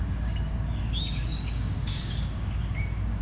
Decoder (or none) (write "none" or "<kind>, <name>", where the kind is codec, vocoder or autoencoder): codec, DAC